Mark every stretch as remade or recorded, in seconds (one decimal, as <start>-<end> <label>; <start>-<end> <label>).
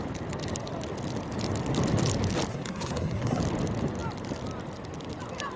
0.0-2.5 recorded; 2.5-3.4 remade; 3.4-5.6 recorded